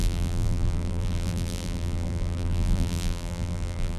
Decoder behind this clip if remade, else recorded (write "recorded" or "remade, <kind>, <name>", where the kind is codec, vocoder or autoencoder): remade, vocoder, BigVGAN v2